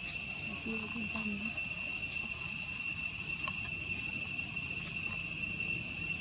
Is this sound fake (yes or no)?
no